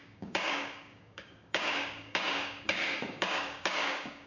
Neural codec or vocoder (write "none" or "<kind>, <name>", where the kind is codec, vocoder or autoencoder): codec, DAC